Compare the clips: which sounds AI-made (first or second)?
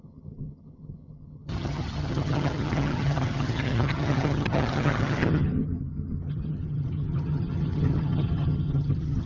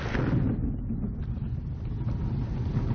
first